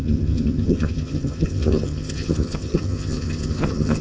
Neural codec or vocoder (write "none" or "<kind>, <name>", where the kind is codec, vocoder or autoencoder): vocoder, HiFi-GAN